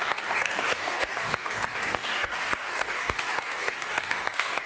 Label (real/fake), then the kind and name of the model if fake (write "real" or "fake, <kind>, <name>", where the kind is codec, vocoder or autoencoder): fake, codec, DAC